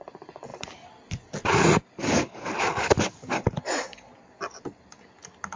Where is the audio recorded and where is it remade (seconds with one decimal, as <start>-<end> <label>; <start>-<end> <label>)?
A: 0.0-2.0 recorded; 2.0-3.4 remade; 3.4-5.6 recorded